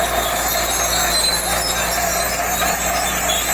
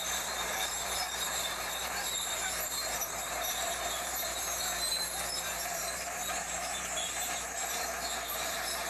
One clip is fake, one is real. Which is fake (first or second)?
second